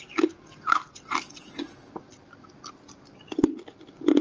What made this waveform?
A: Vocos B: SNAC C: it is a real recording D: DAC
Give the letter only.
C